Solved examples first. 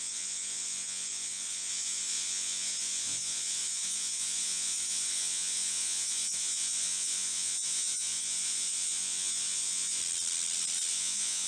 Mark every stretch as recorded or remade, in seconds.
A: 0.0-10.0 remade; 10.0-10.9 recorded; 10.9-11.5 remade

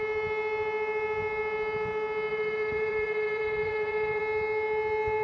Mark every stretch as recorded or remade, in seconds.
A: 0.0-2.3 recorded; 2.3-4.2 remade; 4.2-5.2 recorded

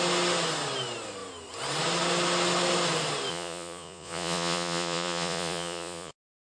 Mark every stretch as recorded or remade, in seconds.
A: 0.0-3.3 recorded; 3.3-6.1 remade; 6.1-6.6 recorded